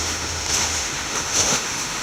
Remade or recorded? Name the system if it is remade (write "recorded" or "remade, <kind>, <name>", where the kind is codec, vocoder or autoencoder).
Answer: remade, autoencoder, DAC-VAE